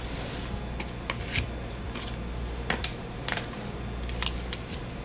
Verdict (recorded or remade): recorded